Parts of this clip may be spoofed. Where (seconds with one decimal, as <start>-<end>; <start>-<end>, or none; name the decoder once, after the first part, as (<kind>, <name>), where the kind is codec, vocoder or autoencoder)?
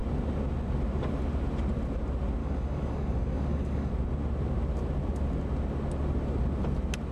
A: 2.4-3.9 (codec, DAC)